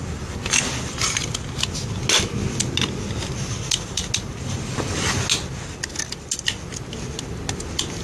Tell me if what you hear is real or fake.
real